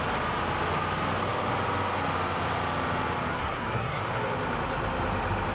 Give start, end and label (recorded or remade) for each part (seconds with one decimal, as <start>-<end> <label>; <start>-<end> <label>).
0.0-3.3 recorded; 3.3-4.0 remade; 4.0-5.5 recorded